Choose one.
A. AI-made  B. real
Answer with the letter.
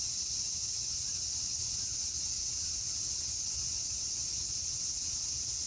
B